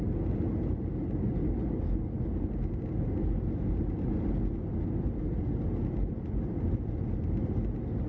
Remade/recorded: recorded